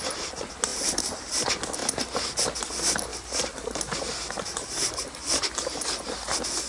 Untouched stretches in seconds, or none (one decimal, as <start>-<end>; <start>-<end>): 0.0-0.7; 1.3-3.1; 4.3-6.7